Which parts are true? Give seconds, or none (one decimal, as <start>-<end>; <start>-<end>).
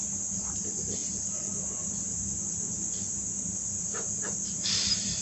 0.0-5.2